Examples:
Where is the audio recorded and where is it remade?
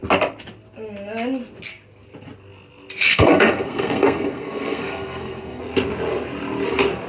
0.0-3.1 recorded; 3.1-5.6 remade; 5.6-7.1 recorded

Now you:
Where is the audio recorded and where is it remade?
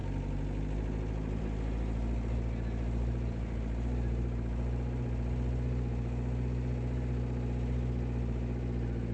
0.0-9.1 recorded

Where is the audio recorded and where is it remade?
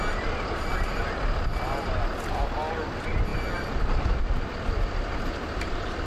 0.0-3.3 recorded; 3.3-4.3 remade; 4.3-6.1 recorded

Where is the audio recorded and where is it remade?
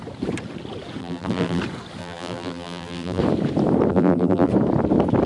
0.0-1.0 recorded; 1.0-1.6 remade; 1.6-2.0 recorded; 2.0-3.2 remade; 3.2-3.9 recorded; 3.9-4.5 remade; 4.5-5.3 recorded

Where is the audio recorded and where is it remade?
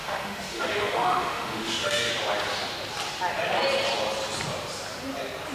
0.0-2.1 remade; 2.1-5.5 recorded